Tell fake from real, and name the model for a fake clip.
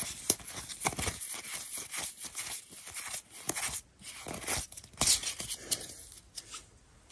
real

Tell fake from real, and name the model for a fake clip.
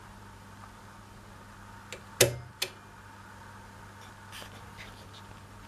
real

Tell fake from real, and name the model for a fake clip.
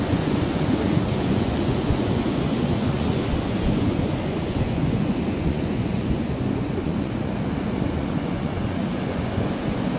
fake, vocoder, Vocos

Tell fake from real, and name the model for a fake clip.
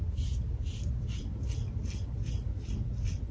real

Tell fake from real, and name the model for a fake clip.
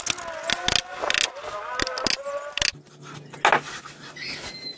real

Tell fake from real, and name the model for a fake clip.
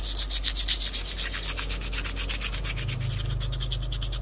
real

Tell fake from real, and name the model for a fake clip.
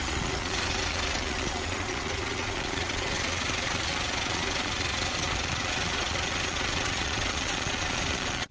fake, vocoder, Vocos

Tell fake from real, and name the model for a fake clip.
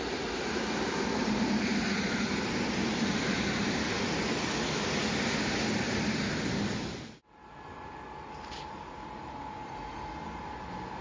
real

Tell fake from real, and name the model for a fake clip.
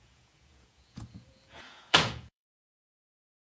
fake, vocoder, Vocos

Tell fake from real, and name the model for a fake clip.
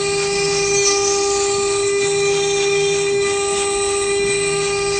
real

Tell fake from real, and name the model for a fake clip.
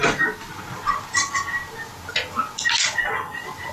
real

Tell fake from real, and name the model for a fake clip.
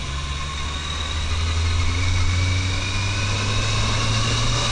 real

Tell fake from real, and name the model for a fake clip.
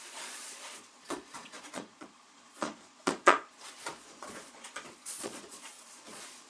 fake, vocoder, Vocos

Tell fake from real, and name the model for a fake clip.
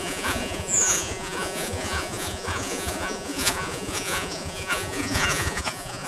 fake, vocoder, Vocos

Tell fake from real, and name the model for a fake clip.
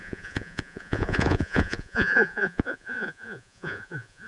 fake, vocoder, Vocos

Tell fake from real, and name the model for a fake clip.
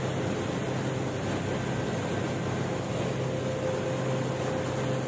real